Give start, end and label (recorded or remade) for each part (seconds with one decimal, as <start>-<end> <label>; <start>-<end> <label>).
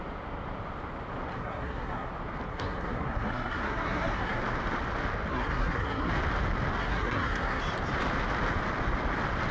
0.0-1.3 recorded; 1.3-2.1 remade; 2.1-2.5 recorded; 2.5-4.4 remade; 4.4-5.3 recorded; 5.3-6.1 remade; 6.1-6.8 recorded; 6.8-7.6 remade; 7.6-9.5 recorded